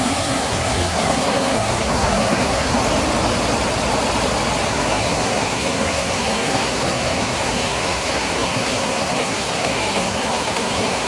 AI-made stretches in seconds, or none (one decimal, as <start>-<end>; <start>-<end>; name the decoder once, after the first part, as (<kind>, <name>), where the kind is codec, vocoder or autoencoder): 0.0-2.7 (codec, SNAC); 4.7-11.1